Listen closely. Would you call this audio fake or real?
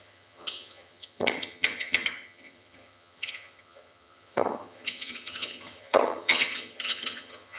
fake